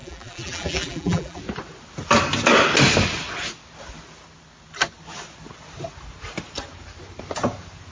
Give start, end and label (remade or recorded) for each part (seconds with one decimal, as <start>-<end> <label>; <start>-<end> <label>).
0.0-1.4 remade; 1.4-7.9 recorded